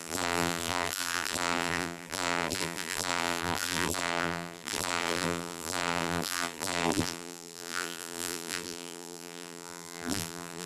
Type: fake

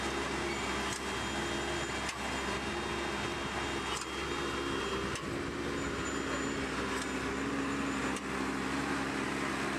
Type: real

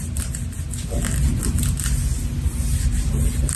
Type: real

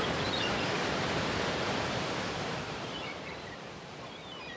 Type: fake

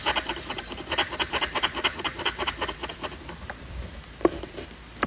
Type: fake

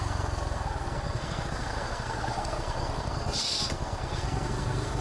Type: fake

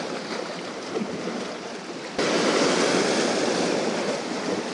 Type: real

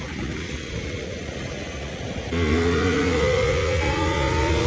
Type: fake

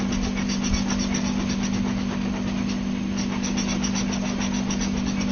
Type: real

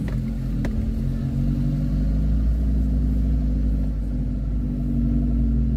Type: real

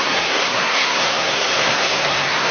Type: fake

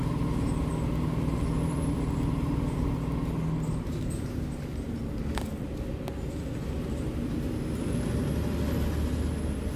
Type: real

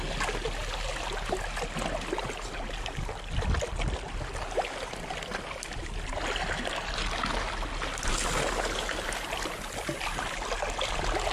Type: real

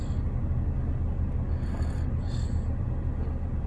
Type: real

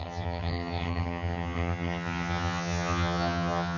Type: fake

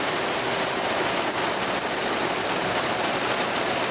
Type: real